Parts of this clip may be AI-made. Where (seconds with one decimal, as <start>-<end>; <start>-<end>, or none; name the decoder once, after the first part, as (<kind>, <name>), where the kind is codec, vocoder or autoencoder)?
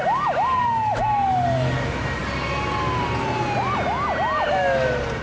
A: none